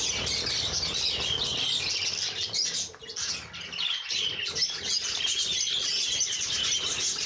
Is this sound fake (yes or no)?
no